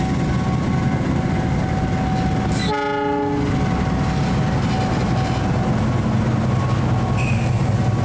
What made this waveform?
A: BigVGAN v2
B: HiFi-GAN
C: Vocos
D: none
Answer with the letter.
D